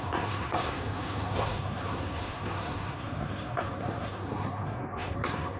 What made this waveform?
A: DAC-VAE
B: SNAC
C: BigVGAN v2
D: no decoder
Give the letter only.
B